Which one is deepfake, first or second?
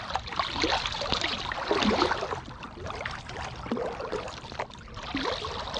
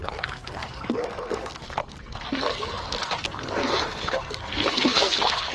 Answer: second